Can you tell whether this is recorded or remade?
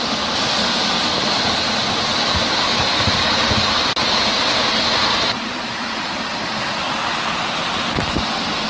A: recorded